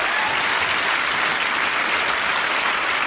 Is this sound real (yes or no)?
yes